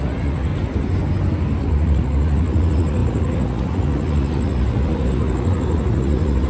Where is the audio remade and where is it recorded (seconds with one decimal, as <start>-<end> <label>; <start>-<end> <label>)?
0.0-0.5 remade; 0.5-1.6 recorded; 1.6-6.5 remade